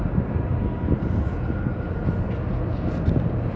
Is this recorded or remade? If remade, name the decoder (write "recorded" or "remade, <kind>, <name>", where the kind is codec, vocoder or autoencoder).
recorded